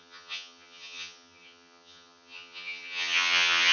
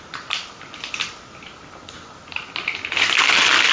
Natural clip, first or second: second